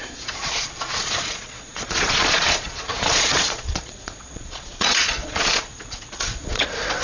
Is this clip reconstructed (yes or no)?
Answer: yes